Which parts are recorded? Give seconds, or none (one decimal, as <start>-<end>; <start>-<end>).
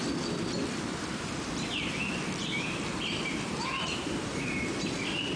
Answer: 0.0-0.9; 1.5-2.4; 4.8-5.4